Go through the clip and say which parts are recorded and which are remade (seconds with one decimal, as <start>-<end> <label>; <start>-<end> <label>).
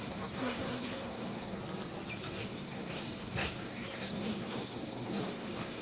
0.0-1.6 remade; 1.6-2.3 recorded; 2.3-5.8 remade